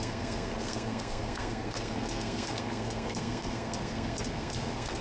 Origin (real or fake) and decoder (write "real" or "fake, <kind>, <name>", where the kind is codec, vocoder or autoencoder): fake, codec, SNAC